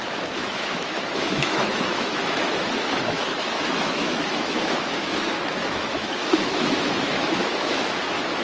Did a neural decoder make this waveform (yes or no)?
yes